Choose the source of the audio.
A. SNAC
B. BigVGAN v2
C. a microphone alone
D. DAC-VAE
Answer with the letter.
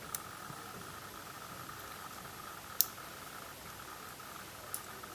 C